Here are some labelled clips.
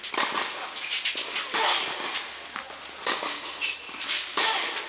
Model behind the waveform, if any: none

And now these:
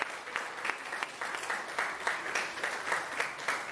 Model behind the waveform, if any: none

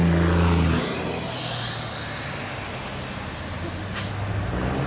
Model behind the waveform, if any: none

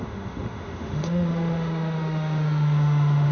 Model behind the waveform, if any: autoencoder, DAC-VAE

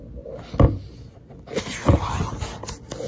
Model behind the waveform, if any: none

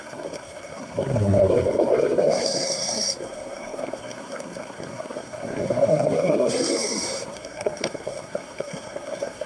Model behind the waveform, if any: codec, SNAC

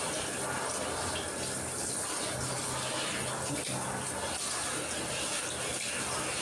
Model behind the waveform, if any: none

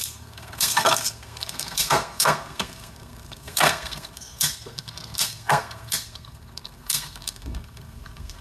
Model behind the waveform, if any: codec, SNAC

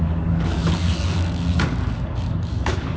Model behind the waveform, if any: codec, DAC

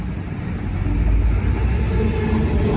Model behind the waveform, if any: none